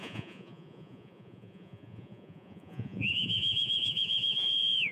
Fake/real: fake